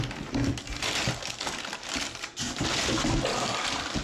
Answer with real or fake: real